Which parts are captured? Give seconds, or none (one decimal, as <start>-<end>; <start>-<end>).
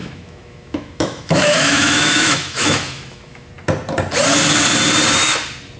3.5-5.8